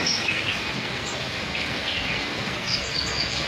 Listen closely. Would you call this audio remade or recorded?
remade